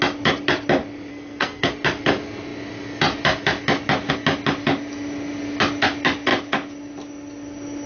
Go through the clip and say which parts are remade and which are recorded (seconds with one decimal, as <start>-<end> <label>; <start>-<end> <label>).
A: 0.0-1.1 recorded; 1.1-1.7 remade; 1.7-7.9 recorded